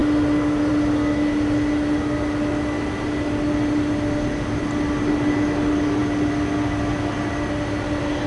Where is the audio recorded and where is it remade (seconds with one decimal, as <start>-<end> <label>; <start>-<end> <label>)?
0.0-8.3 recorded